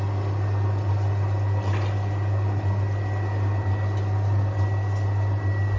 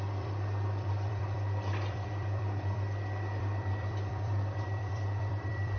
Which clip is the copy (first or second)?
second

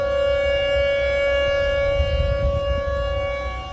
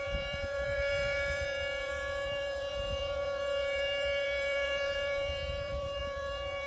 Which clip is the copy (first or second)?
second